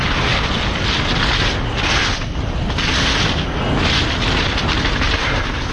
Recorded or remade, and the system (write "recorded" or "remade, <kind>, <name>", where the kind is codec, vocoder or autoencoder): recorded